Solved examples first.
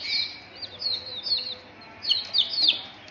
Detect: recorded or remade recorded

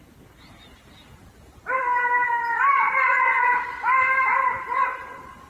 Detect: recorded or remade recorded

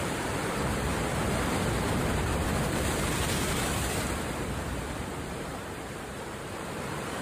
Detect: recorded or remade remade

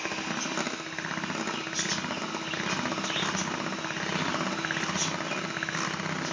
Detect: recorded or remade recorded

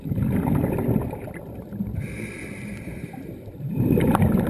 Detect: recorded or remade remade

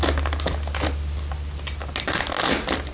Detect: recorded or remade recorded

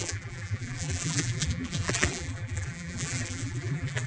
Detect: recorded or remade remade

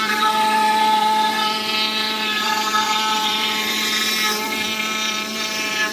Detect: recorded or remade remade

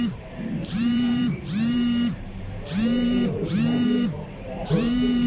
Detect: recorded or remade remade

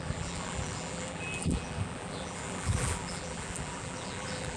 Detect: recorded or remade remade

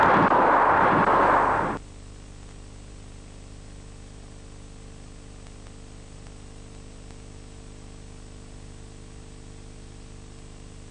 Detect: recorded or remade recorded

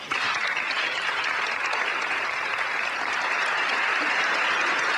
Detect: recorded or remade remade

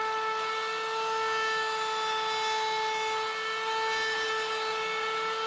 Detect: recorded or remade recorded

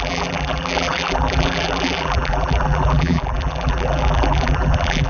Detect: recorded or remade remade